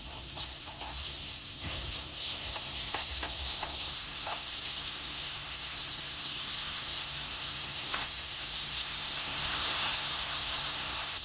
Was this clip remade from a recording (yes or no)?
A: yes